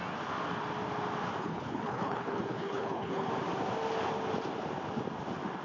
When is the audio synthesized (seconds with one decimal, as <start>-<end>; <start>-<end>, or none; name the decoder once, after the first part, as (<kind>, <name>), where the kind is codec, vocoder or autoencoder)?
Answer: 1.4-3.3 (codec, HILCodec)